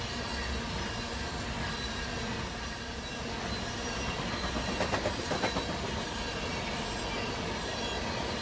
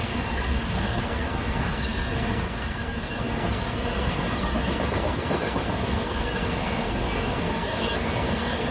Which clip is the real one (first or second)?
first